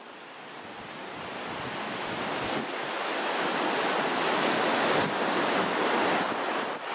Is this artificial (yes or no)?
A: no